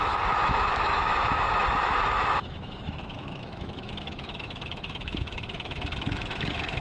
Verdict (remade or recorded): remade